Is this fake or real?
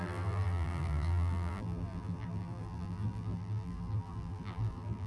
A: fake